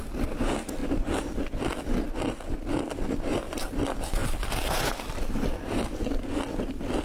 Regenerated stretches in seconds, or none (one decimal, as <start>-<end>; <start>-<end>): 0.8-1.6; 3.3-3.8; 4.2-5.3